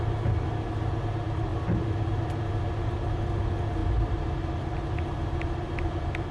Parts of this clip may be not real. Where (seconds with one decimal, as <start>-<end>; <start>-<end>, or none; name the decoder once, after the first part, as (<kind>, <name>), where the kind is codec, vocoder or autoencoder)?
3.8-6.3 (vocoder, BigVGAN v2)